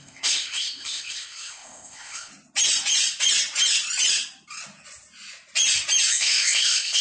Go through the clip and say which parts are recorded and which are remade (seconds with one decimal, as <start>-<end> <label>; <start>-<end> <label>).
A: 0.0-2.3 remade; 2.3-6.1 recorded; 6.1-7.0 remade